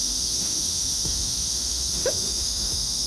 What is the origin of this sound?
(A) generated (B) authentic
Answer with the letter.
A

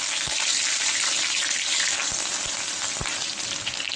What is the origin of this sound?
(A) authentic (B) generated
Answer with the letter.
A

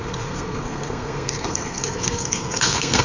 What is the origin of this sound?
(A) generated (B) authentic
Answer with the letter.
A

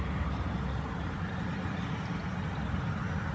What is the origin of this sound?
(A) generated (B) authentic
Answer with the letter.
B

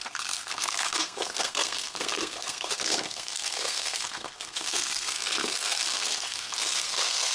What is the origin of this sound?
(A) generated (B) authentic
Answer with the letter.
A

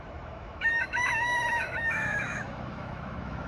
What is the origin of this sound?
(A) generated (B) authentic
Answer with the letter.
A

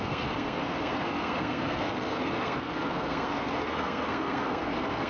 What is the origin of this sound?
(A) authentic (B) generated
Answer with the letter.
B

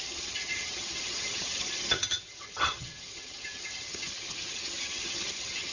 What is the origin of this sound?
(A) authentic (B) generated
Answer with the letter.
B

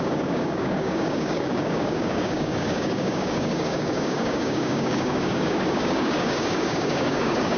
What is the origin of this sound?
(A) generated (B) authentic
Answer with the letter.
A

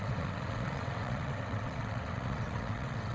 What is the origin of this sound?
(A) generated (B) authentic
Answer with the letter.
A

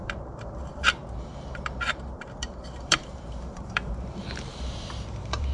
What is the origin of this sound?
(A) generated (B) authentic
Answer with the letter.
A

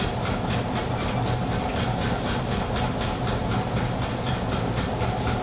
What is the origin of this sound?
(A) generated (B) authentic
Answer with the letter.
B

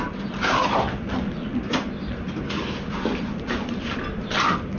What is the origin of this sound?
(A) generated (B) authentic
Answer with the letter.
B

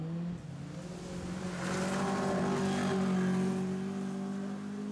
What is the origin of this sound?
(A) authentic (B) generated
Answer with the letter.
A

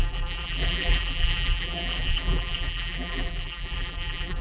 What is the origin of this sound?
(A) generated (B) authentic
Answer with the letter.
A